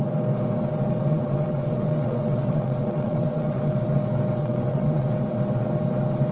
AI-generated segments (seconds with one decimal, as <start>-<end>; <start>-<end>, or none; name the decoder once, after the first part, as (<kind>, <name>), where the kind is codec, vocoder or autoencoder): 1.1-3.6 (vocoder, WaveNeXt); 4.4-5.1